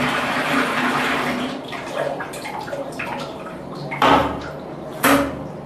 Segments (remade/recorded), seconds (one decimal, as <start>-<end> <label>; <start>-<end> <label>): 0.0-5.7 remade